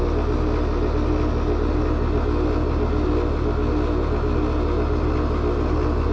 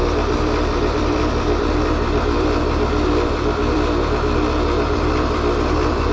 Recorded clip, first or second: first